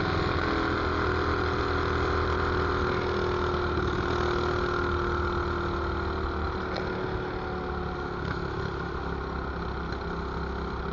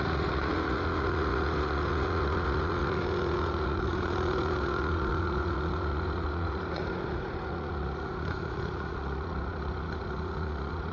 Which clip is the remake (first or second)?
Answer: second